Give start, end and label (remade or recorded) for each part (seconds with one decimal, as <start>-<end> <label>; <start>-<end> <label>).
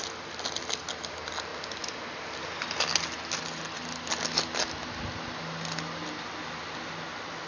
0.0-7.5 recorded